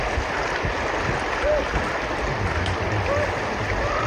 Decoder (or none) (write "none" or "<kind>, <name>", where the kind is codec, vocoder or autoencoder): none